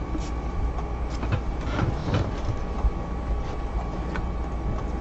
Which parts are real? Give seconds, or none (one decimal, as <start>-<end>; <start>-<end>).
0.0-5.0